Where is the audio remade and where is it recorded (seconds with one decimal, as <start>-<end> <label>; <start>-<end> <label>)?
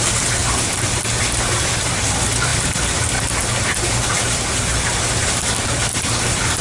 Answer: 0.0-6.6 recorded